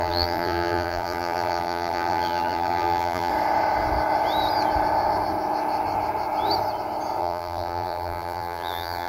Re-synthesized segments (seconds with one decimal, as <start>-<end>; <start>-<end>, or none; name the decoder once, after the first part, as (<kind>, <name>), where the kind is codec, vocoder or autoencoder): 0.0-3.3 (vocoder, BigVGAN v2); 7.2-9.1